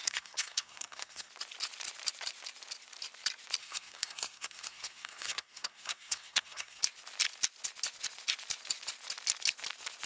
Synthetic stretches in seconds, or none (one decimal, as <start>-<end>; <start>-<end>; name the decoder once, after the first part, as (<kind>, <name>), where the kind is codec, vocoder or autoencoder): 0.0-1.3 (codec, SNAC); 3.6-6.8